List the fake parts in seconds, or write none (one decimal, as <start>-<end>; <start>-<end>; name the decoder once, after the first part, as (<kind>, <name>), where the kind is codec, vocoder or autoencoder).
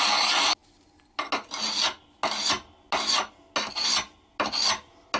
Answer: none